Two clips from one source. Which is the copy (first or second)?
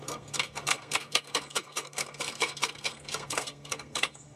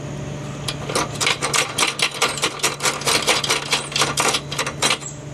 first